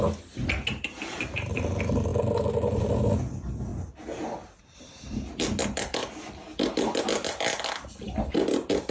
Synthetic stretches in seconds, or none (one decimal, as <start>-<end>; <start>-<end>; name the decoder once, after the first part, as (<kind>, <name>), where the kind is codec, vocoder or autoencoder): none

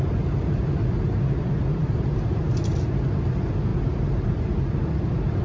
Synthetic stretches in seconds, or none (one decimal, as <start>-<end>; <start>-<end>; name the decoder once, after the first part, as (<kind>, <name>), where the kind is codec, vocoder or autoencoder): 1.8-2.7 (vocoder, BigVGAN v2); 3.7-4.9

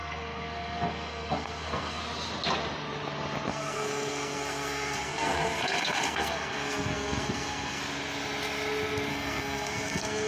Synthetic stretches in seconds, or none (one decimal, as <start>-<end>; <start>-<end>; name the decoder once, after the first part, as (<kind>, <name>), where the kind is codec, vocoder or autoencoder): 0.0-2.0 (codec, SNAC); 3.5-7.8; 9.1-10.3